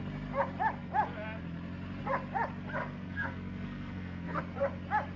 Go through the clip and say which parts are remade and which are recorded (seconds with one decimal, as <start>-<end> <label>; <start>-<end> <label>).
0.0-2.8 recorded; 2.8-4.4 remade; 4.4-5.2 recorded